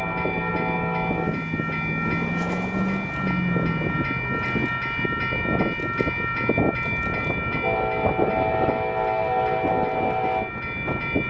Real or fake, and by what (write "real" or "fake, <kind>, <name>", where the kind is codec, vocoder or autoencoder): real